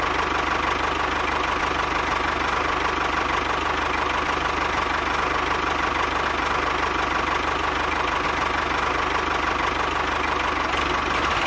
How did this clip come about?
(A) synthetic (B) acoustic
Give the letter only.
B